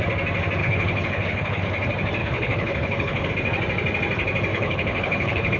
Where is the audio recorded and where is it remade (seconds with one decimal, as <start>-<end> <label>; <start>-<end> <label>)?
0.0-0.6 recorded; 0.6-1.6 remade; 1.6-2.2 recorded; 2.2-3.3 remade; 3.3-4.5 recorded; 4.5-5.6 remade